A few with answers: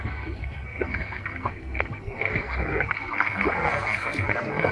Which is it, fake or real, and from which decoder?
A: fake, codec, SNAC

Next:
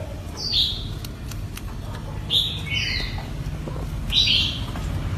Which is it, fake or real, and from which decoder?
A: real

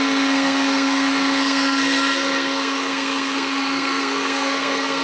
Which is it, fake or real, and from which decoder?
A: fake, codec, SNAC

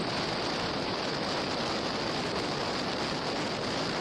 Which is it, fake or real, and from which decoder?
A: real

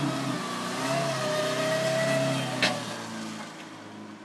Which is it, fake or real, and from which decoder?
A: real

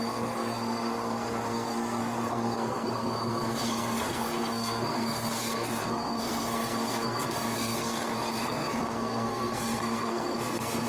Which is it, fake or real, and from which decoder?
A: fake, codec, SNAC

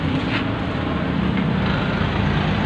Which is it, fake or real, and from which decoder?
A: real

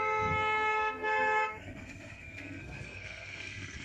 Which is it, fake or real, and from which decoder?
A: fake, codec, SNAC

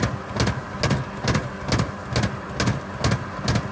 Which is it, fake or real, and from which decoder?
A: real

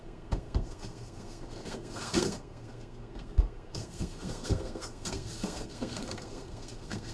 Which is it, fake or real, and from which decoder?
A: fake, codec, SNAC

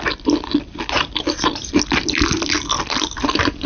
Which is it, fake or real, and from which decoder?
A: real